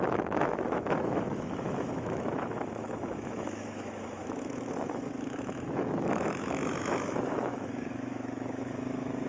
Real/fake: fake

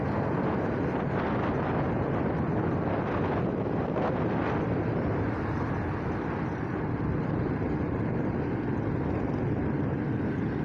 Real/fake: real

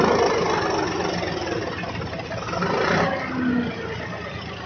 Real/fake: real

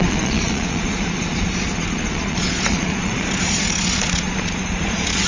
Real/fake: fake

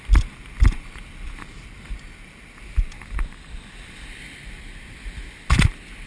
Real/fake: real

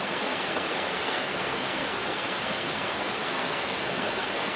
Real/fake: fake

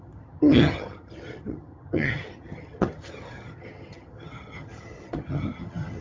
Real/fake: fake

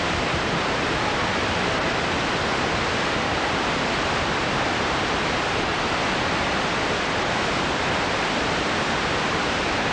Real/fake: real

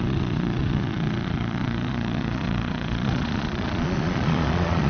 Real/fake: fake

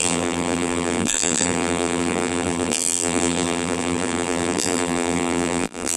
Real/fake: fake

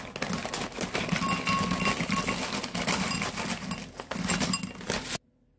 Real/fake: real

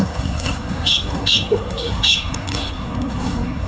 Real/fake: fake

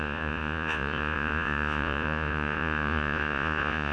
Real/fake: fake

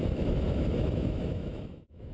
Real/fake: fake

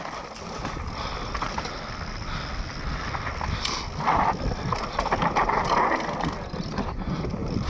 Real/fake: real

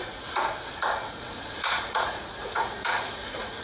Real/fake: fake